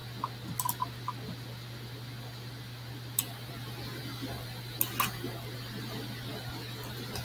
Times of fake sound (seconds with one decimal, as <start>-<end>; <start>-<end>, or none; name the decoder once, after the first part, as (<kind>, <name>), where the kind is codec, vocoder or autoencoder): none